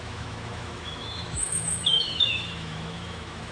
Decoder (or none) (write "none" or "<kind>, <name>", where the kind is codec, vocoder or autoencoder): autoencoder, DAC-VAE